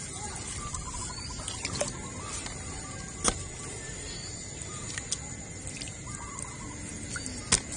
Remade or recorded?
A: recorded